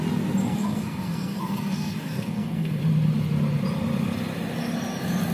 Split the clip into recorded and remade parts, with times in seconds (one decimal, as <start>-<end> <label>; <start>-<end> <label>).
0.0-0.4 recorded; 0.4-2.8 remade; 2.8-5.3 recorded